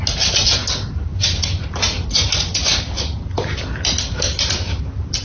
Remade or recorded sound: recorded